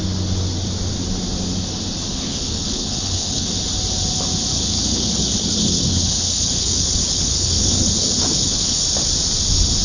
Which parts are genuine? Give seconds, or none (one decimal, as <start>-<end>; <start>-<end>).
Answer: 0.0-2.1; 3.5-4.5; 8.8-9.8